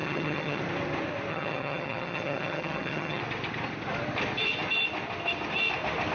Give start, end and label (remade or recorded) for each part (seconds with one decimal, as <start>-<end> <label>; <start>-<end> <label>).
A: 0.0-0.6 remade; 0.6-1.3 recorded; 1.3-3.2 remade; 3.2-6.1 recorded